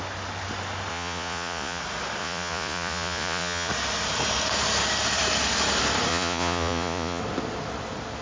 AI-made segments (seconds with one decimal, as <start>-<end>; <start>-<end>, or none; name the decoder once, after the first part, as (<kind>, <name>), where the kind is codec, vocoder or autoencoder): 0.9-1.8 (vocoder, Vocos); 2.2-3.7; 6.1-7.2